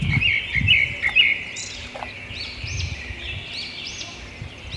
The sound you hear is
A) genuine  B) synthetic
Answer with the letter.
A